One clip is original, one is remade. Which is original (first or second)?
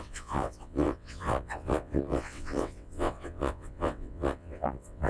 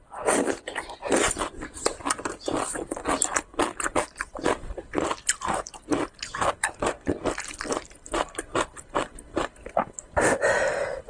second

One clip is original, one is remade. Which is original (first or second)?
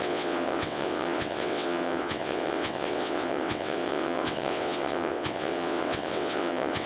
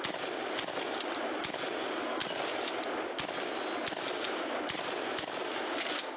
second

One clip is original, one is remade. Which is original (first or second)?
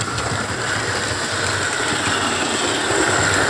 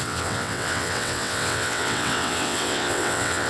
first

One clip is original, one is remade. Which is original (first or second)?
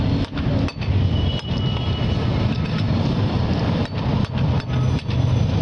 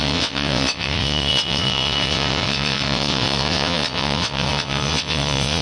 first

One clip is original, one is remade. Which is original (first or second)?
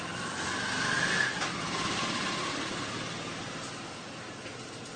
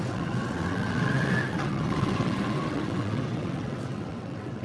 first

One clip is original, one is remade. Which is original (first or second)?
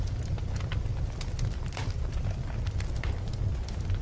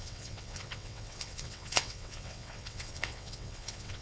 first